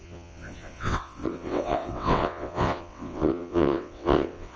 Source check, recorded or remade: remade